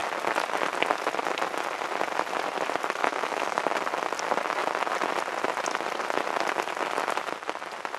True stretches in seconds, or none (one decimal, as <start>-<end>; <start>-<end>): 0.0-3.0; 3.6-8.0